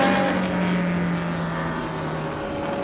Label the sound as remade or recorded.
recorded